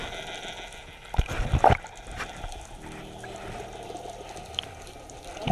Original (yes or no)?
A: yes